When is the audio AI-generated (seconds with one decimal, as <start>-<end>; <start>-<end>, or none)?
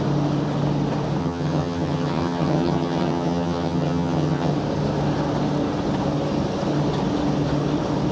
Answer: 1.2-4.5